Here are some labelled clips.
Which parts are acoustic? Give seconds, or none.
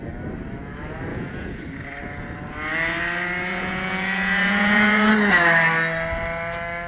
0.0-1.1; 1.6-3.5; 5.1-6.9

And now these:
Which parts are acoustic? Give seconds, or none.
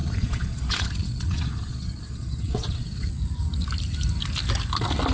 3.1-5.1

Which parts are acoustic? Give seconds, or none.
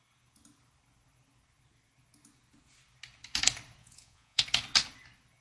0.0-3.8; 4.4-5.4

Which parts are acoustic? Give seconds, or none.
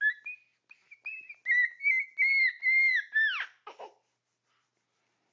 0.0-5.3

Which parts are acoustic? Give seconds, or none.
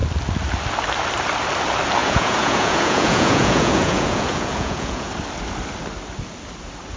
0.0-2.0; 5.1-7.0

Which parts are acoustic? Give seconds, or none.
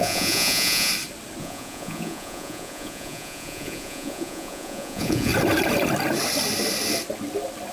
0.9-1.4; 5.3-7.7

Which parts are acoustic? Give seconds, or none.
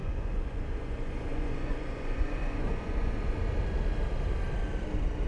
3.2-5.3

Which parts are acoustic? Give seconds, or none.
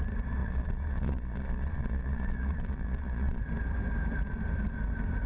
0.0-0.4; 3.4-5.3